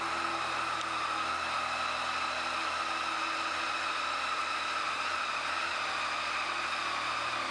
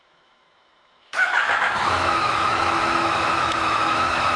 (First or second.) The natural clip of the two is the first